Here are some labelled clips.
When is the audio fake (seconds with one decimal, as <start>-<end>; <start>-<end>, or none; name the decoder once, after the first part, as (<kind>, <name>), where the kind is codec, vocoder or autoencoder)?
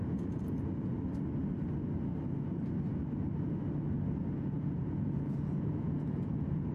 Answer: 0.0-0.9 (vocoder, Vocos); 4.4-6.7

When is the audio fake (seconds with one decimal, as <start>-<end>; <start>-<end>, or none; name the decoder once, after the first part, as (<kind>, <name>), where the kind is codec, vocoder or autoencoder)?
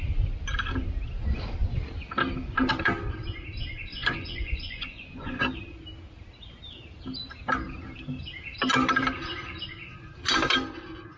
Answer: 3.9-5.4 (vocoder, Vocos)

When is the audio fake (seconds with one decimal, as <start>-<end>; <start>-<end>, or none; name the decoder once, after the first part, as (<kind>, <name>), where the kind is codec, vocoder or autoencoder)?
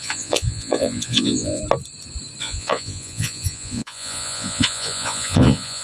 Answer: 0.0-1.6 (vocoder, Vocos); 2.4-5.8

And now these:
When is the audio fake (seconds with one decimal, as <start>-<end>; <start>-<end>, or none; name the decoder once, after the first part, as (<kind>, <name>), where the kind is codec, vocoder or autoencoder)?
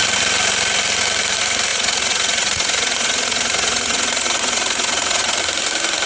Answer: 1.7-5.4 (vocoder, Vocos)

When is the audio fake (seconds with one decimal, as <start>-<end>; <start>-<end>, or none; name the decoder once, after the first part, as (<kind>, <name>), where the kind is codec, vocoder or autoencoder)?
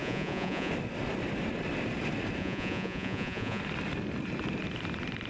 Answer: 0.0-0.7 (vocoder, Vocos); 2.4-3.6